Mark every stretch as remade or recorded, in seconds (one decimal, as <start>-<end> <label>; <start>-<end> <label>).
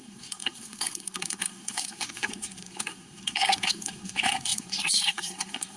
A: 0.0-5.8 remade